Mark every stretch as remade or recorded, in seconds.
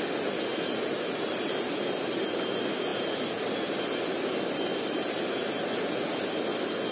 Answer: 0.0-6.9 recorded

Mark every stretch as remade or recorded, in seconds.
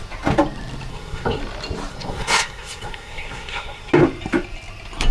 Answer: 0.0-0.9 recorded; 0.9-1.4 remade; 1.4-1.9 recorded; 1.9-3.9 remade; 3.9-5.1 recorded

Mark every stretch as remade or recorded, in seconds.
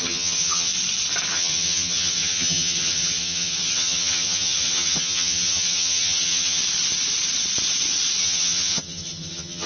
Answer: 0.0-0.7 remade; 0.7-1.3 recorded; 1.3-6.6 remade; 6.6-8.2 recorded; 8.2-9.7 remade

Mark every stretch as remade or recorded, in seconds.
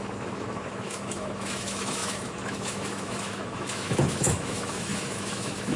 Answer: 0.0-5.8 remade